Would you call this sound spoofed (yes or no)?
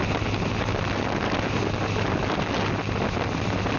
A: no